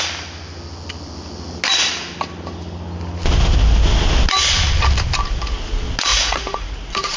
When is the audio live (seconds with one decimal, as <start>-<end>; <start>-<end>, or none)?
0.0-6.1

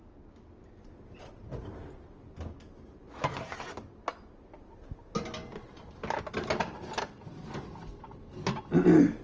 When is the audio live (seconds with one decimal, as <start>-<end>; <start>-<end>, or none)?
0.0-9.2

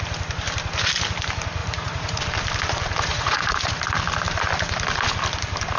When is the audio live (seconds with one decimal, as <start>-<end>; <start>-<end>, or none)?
0.0-1.6; 2.2-3.1; 3.7-5.8